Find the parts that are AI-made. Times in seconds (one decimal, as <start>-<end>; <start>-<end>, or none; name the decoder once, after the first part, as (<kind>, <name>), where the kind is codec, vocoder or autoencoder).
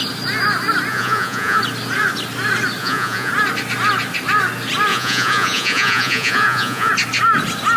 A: 0.9-1.6 (vocoder, Vocos); 2.8-3.3; 4.9-6.9